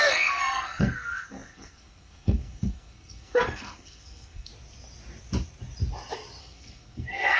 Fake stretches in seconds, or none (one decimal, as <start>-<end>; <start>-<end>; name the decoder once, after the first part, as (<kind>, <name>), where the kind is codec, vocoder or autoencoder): 0.0-4.5 (codec, SNAC); 6.4-7.4